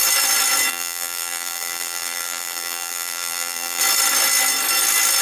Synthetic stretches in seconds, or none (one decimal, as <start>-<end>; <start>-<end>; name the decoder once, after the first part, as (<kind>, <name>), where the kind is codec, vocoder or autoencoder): 0.7-3.8 (vocoder, BigVGAN v2)